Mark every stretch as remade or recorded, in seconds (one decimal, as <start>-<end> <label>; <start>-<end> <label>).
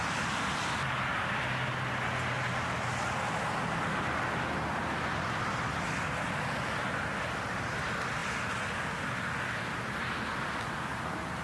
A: 0.0-11.4 recorded